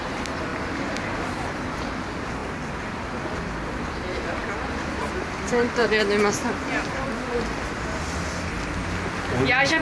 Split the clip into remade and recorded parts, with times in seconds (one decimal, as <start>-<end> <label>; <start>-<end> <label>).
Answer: 0.0-9.8 recorded